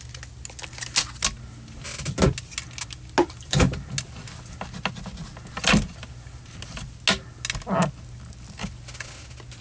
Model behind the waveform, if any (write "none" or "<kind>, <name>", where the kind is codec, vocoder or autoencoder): none